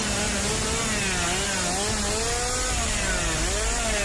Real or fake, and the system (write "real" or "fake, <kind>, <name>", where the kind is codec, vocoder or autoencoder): real